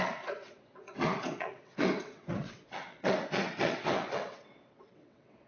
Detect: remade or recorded remade